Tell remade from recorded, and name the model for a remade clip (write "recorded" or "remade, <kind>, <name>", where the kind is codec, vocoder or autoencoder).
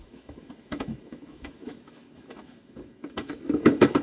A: remade, autoencoder, DAC-VAE